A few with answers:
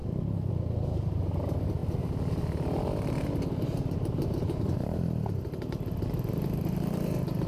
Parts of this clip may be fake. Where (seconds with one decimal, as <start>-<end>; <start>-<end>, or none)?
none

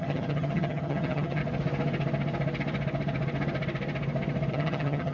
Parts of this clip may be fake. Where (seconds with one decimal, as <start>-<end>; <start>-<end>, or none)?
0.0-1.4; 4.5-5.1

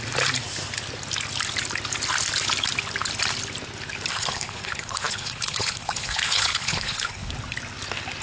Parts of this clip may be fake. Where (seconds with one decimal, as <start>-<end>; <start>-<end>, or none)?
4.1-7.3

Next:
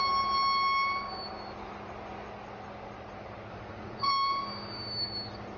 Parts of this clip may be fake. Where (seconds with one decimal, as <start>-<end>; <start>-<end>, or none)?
3.5-4.1